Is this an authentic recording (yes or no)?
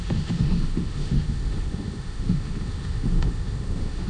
no